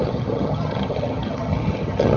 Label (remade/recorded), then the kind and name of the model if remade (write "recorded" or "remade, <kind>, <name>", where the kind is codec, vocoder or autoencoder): remade, vocoder, HiFi-GAN